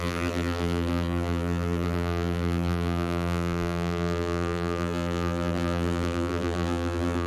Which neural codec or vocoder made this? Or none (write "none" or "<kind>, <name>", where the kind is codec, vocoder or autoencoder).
vocoder, BigVGAN v2